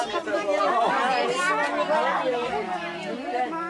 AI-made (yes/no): no